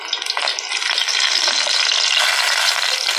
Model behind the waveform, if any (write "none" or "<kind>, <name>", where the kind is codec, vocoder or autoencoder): none